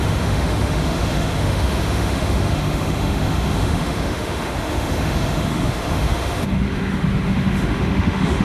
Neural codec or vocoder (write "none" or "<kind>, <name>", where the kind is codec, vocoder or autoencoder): autoencoder, DAC-VAE